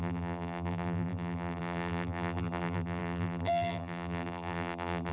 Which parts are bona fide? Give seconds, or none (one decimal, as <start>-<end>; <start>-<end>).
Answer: none